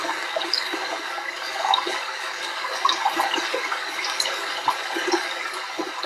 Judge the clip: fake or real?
fake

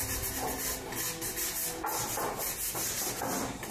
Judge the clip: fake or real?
real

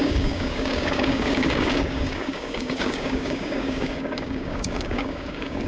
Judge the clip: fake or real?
fake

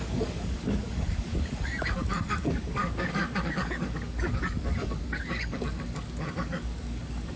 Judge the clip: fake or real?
fake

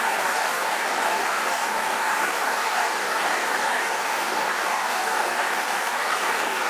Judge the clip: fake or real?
fake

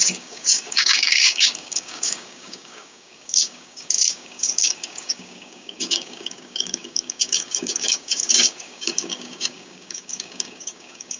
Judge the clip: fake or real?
fake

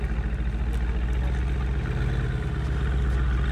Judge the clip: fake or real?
real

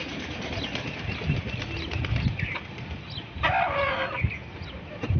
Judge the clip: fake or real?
real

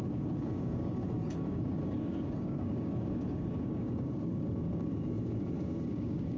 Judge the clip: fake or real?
fake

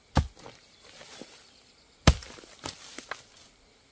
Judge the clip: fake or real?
real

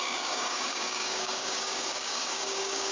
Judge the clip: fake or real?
fake